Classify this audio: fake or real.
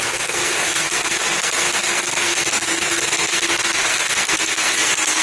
fake